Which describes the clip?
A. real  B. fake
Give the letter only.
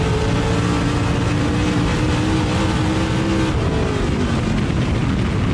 A